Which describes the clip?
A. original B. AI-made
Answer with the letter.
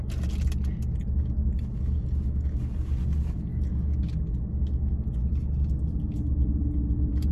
A